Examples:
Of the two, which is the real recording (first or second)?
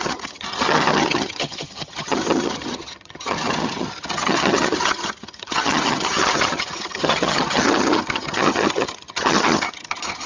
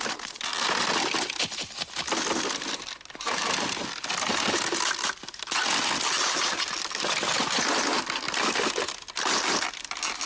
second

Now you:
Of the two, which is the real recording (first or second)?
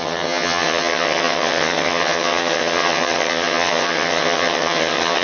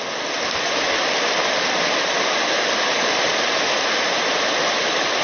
second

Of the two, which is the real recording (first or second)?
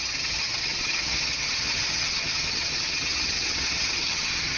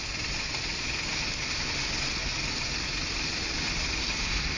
second